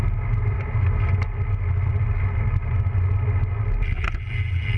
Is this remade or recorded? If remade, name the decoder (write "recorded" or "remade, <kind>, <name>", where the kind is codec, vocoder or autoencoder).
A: recorded